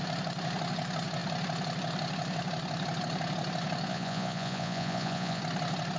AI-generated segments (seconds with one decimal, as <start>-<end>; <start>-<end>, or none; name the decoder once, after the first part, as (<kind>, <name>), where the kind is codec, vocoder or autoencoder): 3.9-5.4 (vocoder, Vocos)